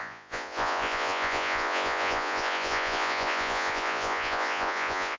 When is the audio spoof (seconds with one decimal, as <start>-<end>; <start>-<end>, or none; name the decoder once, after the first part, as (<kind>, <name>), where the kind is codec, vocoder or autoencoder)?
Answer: 0.0-5.2 (vocoder, Vocos)